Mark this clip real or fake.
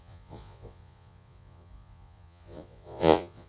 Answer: fake